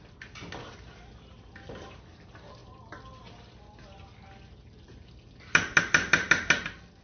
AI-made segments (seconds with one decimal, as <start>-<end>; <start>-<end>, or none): none